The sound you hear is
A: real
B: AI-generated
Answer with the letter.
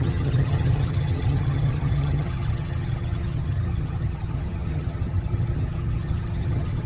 B